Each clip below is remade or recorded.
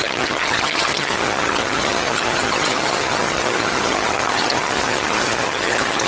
remade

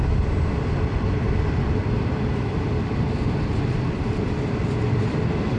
recorded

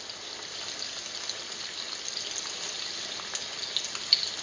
recorded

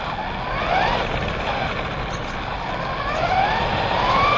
recorded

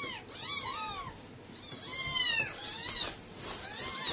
recorded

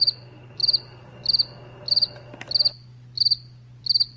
recorded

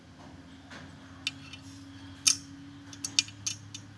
recorded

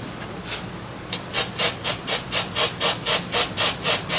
recorded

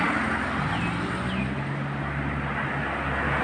recorded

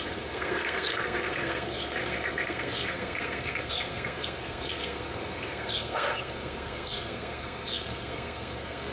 remade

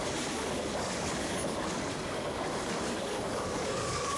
remade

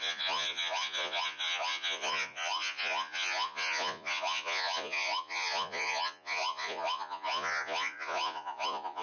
remade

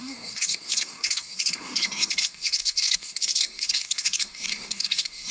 remade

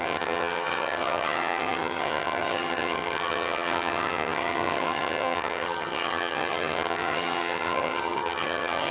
remade